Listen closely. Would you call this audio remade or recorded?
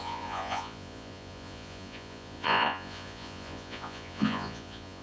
remade